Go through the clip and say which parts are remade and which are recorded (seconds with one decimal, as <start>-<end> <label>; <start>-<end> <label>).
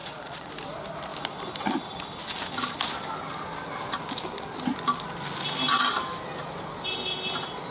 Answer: 0.0-0.5 remade; 0.5-7.7 recorded